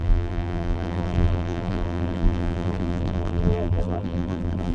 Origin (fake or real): fake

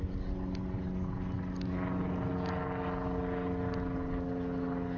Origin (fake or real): real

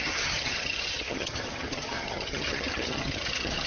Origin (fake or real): fake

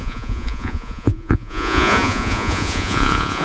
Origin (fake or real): fake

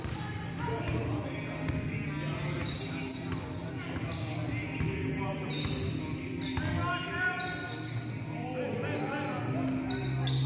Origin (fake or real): real